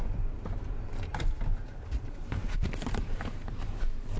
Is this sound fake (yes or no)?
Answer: yes